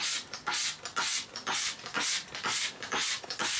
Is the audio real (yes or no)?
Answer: yes